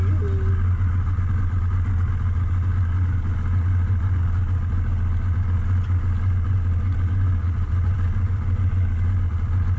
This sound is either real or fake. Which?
real